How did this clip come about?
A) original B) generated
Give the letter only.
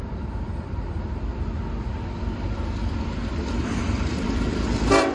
B